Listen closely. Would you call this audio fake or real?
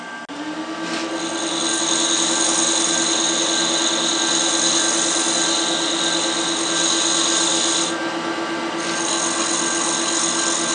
real